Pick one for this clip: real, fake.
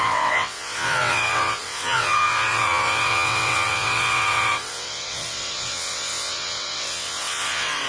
fake